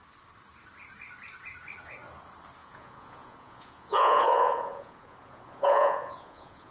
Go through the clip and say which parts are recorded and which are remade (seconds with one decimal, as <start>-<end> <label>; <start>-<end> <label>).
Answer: 0.0-2.6 recorded; 2.6-6.7 remade